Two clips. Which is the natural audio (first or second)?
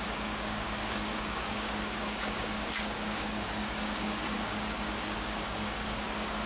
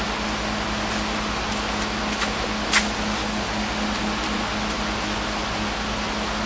second